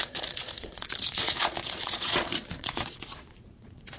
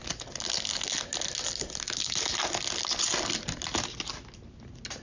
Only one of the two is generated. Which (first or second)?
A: first